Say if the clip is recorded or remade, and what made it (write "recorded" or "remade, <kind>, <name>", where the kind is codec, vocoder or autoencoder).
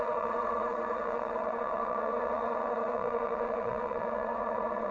remade, vocoder, WaveNeXt